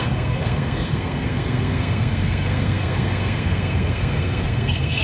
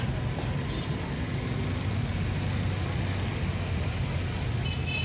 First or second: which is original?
second